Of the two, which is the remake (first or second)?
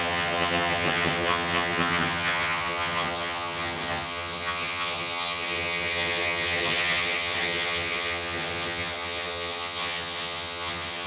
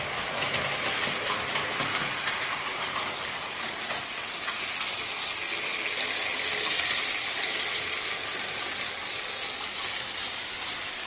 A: first